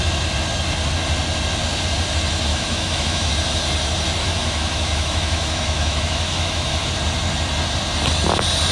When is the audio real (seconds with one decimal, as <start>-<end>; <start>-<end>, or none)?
0.0-2.5; 3.3-4.2; 6.9-8.7